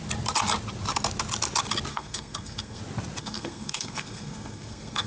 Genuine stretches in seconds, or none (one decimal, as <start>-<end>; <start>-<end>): 0.0-1.9; 2.8-3.2